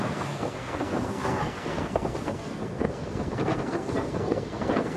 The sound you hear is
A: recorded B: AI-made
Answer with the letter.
B